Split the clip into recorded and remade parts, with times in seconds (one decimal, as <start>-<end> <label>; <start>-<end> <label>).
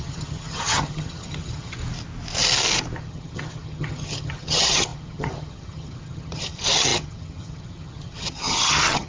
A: 0.0-1.8 remade; 1.8-3.0 recorded; 3.0-9.1 remade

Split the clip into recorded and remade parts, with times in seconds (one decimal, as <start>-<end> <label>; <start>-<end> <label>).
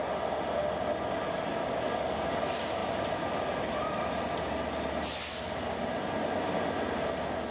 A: 0.0-1.6 recorded; 1.6-2.3 remade; 2.3-7.5 recorded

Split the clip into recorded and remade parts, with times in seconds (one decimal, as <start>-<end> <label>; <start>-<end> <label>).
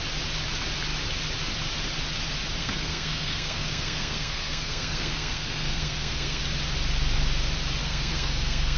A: 0.0-2.6 recorded; 2.6-6.4 remade; 6.4-7.8 recorded; 7.8-8.8 remade